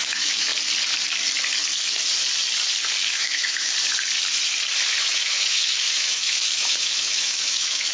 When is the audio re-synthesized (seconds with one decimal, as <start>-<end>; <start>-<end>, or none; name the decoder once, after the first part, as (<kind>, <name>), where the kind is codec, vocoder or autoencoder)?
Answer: 0.0-0.5 (autoencoder, DAC-VAE); 3.1-3.7; 5.0-7.9